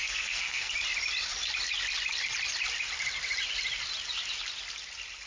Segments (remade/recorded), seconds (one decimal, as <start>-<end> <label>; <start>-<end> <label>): 0.0-0.7 remade; 0.7-5.3 recorded